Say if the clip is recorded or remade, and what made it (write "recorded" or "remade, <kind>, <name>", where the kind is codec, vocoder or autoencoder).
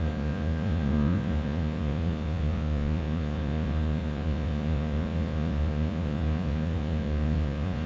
remade, vocoder, Vocos